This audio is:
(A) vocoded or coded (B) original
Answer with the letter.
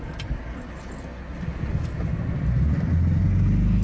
B